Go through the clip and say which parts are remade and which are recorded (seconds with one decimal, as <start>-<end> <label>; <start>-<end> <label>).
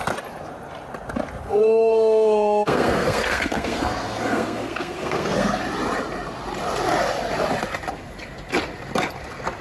0.0-1.4 recorded; 1.4-5.6 remade; 5.6-9.6 recorded